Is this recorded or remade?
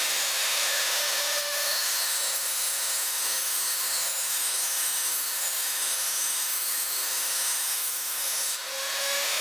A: remade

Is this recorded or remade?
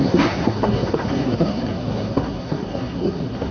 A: remade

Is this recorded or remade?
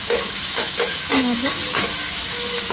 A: remade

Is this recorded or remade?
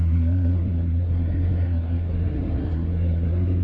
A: remade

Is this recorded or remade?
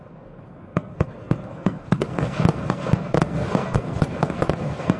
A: remade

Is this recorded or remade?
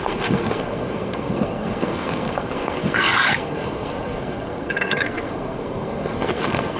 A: remade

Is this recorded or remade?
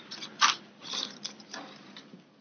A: recorded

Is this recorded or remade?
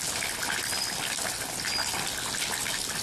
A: recorded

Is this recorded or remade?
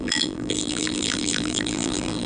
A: remade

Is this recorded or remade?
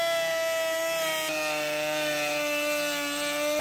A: recorded